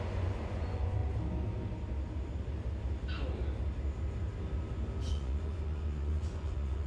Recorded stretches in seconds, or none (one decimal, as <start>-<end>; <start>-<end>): 1.0-5.1